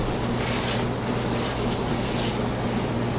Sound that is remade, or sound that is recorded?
recorded